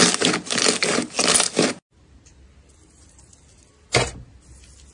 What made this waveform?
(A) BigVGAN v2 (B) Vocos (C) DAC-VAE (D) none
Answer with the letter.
D